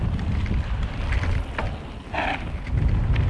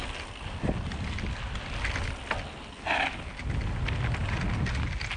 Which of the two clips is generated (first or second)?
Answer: first